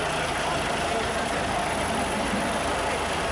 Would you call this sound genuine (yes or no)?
yes